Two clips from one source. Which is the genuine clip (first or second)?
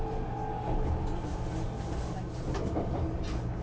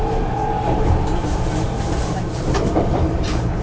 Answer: first